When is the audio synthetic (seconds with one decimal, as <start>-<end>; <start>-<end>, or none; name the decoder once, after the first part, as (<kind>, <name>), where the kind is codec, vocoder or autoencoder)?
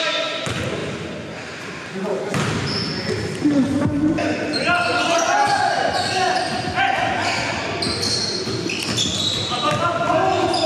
none